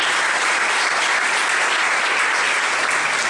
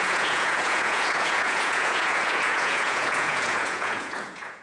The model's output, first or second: second